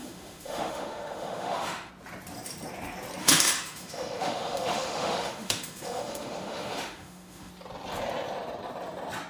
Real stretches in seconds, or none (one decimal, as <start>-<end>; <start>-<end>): 1.9-3.2; 7.5-9.3